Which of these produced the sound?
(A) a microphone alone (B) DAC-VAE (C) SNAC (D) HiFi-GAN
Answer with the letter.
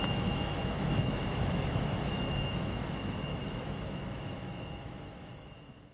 B